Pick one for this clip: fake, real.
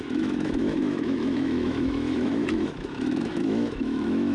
fake